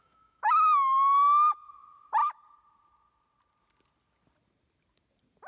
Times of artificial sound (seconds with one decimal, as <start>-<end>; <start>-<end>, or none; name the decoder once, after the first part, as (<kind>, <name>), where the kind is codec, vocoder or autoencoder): 0.0-1.7 (autoencoder, DAC-VAE)